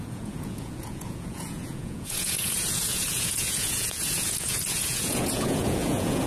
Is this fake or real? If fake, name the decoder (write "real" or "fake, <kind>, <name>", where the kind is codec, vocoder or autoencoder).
fake, vocoder, Vocos